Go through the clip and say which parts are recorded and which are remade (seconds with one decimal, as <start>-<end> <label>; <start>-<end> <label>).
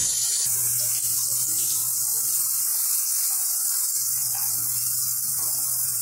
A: 0.0-0.9 remade; 0.9-6.0 recorded